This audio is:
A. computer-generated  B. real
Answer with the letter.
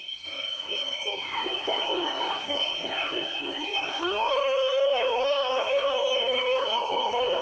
A